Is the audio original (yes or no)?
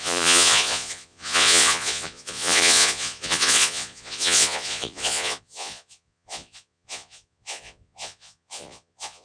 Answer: no